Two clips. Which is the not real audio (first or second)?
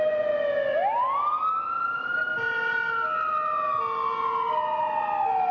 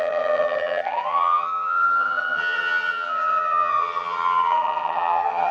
second